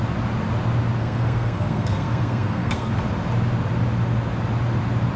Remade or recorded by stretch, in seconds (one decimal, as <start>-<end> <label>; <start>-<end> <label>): 0.0-1.0 recorded; 1.0-2.9 remade; 2.9-5.2 recorded